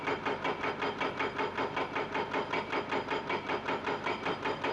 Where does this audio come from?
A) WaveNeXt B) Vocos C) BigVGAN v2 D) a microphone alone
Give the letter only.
D